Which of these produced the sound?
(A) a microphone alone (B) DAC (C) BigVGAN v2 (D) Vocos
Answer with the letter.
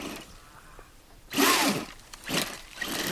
C